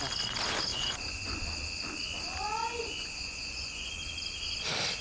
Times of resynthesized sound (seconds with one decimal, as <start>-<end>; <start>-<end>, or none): 0.7-1.4; 2.6-3.9